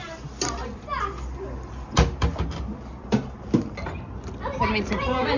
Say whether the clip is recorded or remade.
recorded